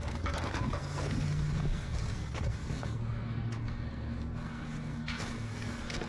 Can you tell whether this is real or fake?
fake